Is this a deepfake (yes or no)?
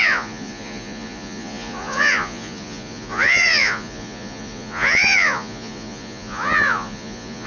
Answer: yes